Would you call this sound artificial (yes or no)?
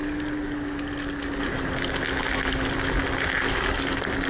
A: no